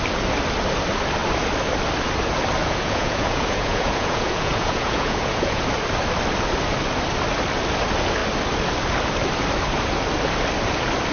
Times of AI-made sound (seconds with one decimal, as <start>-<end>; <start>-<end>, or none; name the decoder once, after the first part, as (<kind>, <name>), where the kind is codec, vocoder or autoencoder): 2.6-5.6 (vocoder, Vocos)